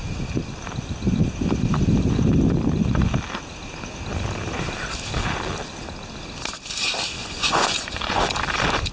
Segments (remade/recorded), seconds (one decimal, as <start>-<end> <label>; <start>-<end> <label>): 0.0-7.2 recorded; 7.2-8.3 remade; 8.3-8.9 recorded